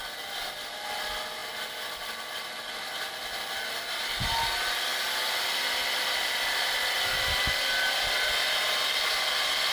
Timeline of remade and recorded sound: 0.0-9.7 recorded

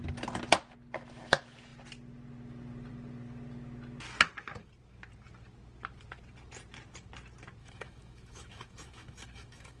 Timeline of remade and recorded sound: 0.0-7.6 recorded; 7.6-9.8 remade